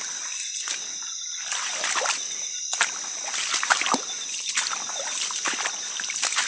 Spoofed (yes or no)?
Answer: no